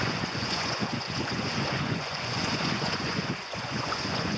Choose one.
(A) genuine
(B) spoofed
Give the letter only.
B